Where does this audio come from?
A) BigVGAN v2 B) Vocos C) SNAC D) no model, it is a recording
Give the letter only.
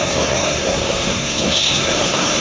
C